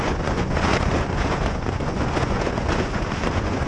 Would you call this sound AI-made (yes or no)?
yes